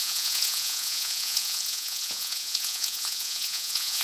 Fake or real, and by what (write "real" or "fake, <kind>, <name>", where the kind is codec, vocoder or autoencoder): fake, vocoder, Vocos